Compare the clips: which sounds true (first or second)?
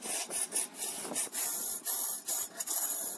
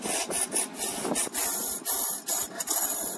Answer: second